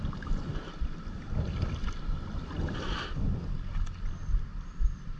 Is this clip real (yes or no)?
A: no